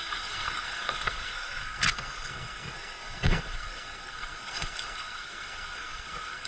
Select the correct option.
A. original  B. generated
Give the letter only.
B